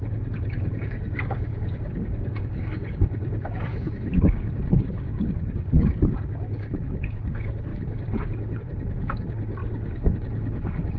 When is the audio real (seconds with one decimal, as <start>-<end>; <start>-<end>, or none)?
none